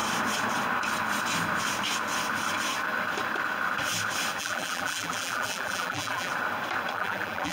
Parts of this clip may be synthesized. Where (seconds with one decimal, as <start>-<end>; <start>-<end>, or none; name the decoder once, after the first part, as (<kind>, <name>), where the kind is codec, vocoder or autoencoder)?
4.4-6.3 (vocoder, BigVGAN v2); 6.9-7.5